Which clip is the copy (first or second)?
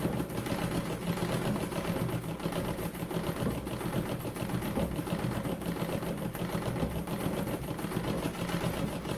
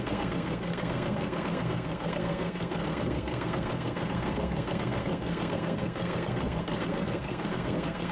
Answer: second